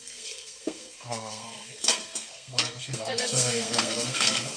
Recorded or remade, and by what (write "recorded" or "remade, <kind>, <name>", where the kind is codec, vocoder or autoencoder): remade, codec, SNAC